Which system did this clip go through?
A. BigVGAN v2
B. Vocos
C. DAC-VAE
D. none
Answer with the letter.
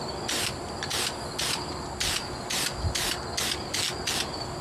D